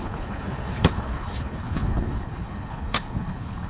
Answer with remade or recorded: remade